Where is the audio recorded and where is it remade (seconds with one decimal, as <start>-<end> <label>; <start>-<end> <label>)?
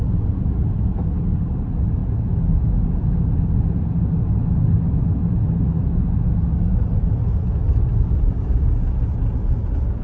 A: 0.0-10.0 recorded